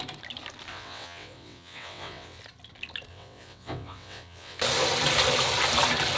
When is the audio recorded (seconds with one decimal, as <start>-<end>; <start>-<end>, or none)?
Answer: 0.0-0.7; 2.4-3.1; 4.6-6.2